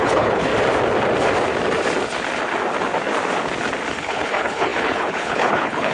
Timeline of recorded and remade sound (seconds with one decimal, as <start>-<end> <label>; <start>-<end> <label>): 0.0-0.5 remade; 0.5-4.0 recorded; 4.0-5.9 remade